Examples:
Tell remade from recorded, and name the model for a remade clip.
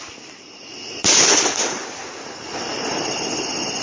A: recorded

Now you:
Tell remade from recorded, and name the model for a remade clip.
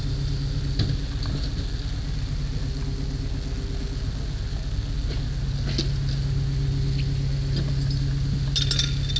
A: recorded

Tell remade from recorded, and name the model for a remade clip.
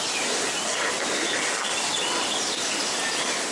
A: recorded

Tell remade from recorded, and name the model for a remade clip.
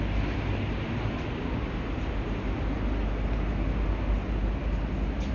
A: recorded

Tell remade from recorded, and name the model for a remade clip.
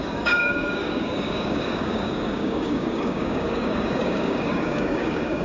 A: remade, codec, DAC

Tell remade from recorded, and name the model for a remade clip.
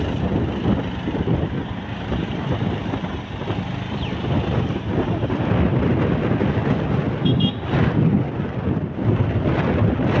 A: recorded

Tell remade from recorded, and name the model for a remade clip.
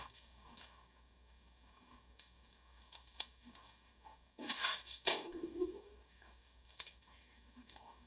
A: remade, codec, DAC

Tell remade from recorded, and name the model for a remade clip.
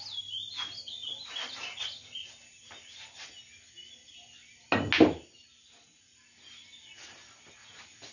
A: recorded